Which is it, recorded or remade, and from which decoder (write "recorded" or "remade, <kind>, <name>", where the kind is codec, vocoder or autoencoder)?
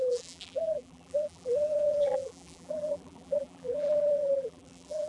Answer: remade, vocoder, BigVGAN v2